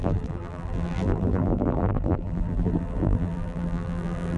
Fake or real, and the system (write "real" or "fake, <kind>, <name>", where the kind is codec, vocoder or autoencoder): fake, vocoder, BigVGAN v2